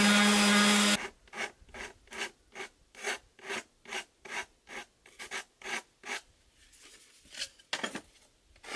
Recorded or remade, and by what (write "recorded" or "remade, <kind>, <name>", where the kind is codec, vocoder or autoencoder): recorded